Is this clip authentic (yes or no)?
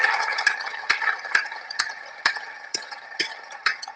no